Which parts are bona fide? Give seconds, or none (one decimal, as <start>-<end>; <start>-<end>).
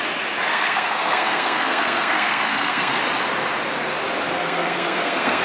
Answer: 0.0-0.5; 3.0-4.4